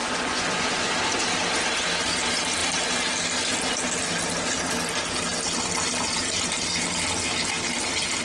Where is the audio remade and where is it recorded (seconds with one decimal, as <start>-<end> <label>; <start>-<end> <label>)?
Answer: 0.0-0.9 remade; 0.9-8.2 recorded